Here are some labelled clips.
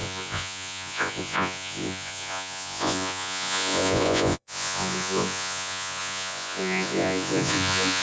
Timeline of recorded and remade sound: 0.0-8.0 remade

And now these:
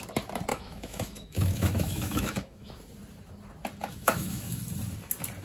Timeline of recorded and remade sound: 0.0-0.5 recorded; 0.5-2.7 remade; 2.7-3.8 recorded; 3.8-4.6 remade; 4.6-5.4 recorded

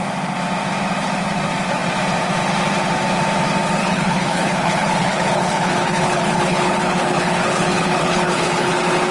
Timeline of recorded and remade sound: 0.0-3.8 recorded; 3.8-8.7 remade; 8.7-9.1 recorded

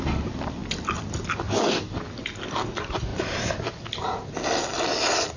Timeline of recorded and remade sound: 0.0-5.4 recorded

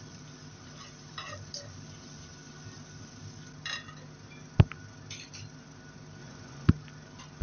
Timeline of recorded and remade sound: 0.0-6.2 recorded; 6.2-6.7 remade; 6.7-7.4 recorded

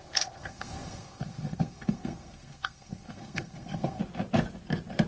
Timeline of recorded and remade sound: 0.0-4.0 remade; 4.0-5.1 recorded

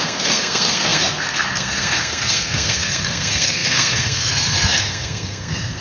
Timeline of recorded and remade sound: 0.0-5.8 remade

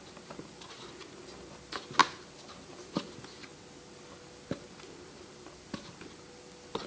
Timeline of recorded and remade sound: 0.0-6.9 recorded